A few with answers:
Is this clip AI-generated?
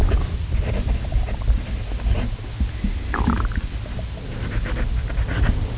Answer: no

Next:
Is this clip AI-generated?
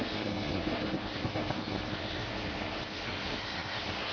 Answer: yes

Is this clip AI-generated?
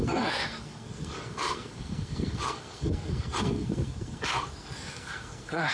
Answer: yes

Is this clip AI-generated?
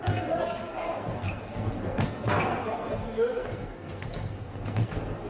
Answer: yes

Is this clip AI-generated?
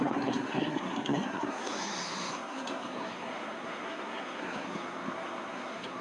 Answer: yes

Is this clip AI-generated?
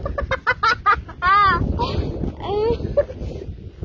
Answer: no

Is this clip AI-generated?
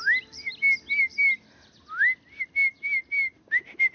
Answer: no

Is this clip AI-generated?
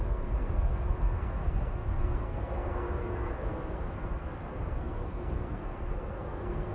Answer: yes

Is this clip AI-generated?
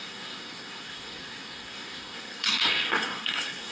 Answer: yes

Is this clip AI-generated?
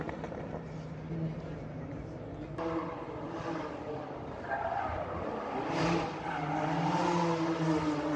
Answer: no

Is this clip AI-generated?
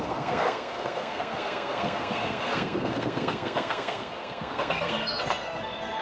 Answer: yes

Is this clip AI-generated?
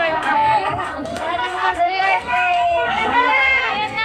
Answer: yes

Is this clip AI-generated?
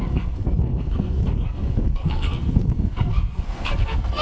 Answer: yes